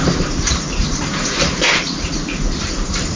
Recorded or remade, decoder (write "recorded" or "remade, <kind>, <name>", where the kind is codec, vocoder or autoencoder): remade, vocoder, BigVGAN v2